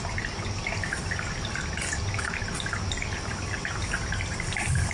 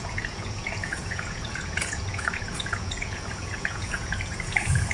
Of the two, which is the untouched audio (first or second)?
first